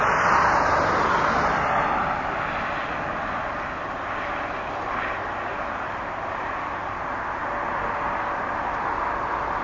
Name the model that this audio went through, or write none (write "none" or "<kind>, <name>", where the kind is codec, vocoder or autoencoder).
none